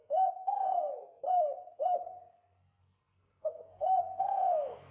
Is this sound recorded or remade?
remade